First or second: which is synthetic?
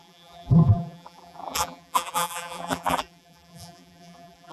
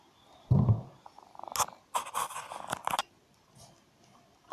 first